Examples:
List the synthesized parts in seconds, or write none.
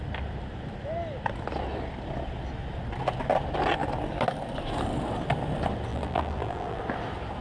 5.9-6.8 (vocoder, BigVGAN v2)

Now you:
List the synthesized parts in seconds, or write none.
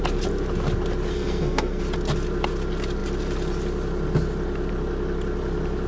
1.1-1.8 (codec, SNAC)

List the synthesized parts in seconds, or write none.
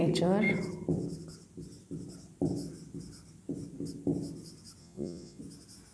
4.8-5.4 (vocoder, Vocos)